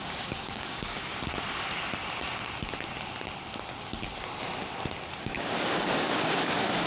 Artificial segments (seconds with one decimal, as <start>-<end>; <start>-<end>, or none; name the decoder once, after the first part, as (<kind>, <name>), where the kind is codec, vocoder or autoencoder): 0.0-1.1 (codec, DAC); 5.2-6.9